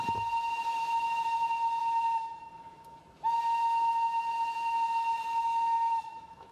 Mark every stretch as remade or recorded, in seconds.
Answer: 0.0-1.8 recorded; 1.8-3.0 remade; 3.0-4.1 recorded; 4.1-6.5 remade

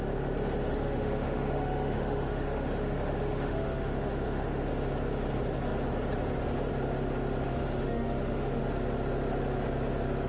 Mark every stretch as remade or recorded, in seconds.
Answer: 0.0-0.7 recorded; 0.7-4.7 remade; 4.7-7.5 recorded; 7.5-8.6 remade; 8.6-10.3 recorded